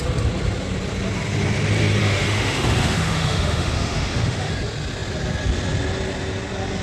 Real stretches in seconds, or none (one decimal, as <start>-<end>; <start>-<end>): 0.0-2.0; 4.5-6.8